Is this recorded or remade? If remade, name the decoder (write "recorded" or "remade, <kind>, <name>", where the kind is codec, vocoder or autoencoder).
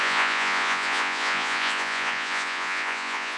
remade, vocoder, Vocos